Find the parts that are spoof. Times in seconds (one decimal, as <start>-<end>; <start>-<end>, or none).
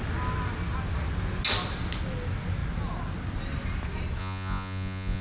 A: 4.2-5.2